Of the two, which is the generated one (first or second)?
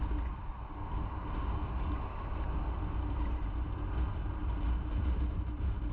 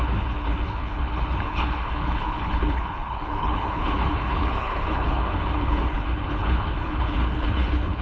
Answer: second